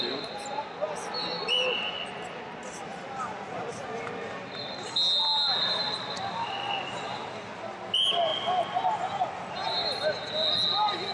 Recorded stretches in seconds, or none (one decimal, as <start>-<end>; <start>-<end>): 0.0-11.1